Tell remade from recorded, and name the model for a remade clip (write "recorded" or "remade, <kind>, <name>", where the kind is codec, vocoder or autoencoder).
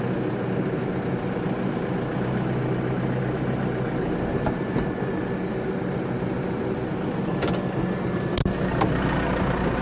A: recorded